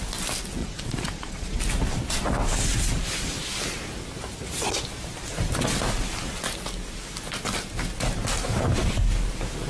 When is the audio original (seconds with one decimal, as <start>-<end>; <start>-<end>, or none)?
0.0-0.6; 1.6-9.7